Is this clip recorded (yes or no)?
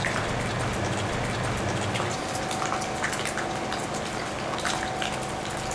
yes